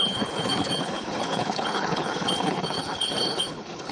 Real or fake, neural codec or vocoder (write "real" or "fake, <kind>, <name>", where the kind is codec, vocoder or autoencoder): fake, codec, HILCodec